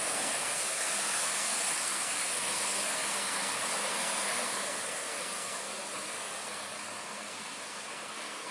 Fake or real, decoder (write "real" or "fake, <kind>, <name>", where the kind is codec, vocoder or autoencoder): fake, codec, SNAC